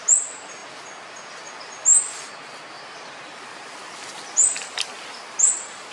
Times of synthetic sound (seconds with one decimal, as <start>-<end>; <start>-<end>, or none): none